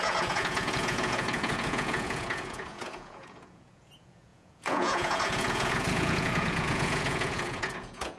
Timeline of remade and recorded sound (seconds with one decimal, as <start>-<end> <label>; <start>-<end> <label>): 0.0-8.2 remade